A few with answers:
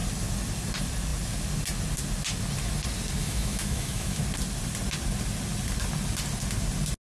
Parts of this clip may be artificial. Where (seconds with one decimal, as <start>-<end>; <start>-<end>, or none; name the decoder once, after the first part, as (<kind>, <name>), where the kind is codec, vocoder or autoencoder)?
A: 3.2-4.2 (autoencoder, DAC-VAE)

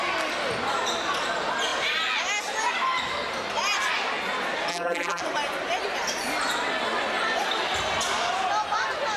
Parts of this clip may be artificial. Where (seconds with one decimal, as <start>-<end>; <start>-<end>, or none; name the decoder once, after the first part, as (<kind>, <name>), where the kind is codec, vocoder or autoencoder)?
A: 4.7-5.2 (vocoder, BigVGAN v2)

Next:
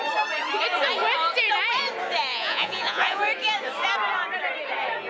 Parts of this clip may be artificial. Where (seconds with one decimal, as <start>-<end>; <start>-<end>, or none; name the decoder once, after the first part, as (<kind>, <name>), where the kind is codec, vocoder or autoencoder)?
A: 2.3-3.2 (vocoder, Vocos)

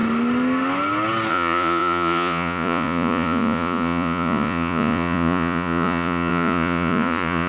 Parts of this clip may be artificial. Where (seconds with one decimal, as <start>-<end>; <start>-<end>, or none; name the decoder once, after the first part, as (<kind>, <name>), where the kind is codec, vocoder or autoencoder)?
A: 1.3-7.5 (vocoder, Vocos)

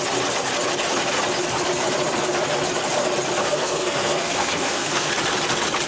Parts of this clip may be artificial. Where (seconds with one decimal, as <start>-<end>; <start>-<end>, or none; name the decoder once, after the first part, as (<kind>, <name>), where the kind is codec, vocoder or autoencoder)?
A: 3.4-5.1 (codec, SNAC)

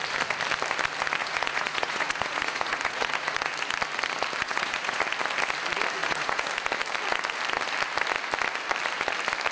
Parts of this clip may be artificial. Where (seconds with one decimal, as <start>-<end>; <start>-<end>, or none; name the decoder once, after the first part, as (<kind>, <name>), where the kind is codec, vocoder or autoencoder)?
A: 1.2-3.5 (vocoder, Vocos); 4.4-5.0; 6.0-6.5